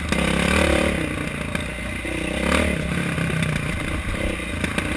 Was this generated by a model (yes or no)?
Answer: no